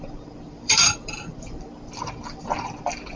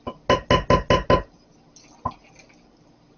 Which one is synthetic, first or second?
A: first